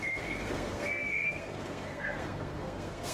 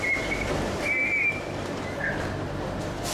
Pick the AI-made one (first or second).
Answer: first